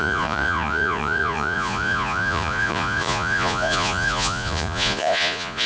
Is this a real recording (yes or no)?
no